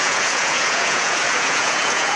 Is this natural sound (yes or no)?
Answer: no